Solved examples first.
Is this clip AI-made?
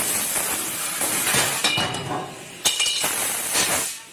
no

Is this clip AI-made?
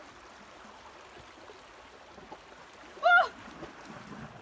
no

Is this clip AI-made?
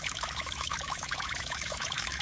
yes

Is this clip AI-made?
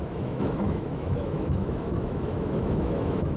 yes